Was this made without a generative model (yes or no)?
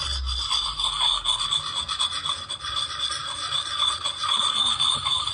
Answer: yes